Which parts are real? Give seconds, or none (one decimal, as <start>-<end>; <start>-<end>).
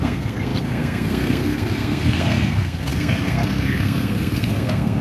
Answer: none